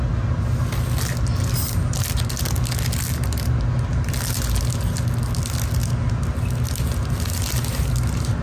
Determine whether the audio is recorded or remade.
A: recorded